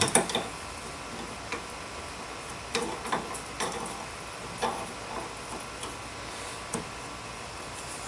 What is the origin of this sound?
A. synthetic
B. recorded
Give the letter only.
B